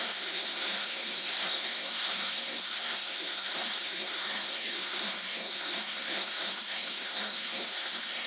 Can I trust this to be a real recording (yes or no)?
no